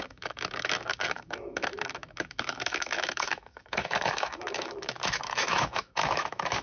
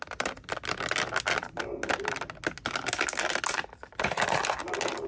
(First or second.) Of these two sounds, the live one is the second